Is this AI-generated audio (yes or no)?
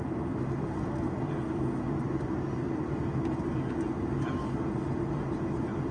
no